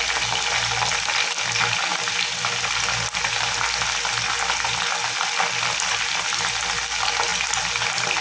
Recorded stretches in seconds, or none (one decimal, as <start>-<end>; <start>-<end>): 0.0-1.9; 3.2-8.2